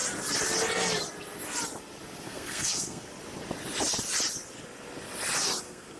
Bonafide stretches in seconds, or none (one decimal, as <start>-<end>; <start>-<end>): 0.0-2.2; 3.1-5.6